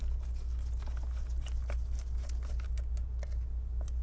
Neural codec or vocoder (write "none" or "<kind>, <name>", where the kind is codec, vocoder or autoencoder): none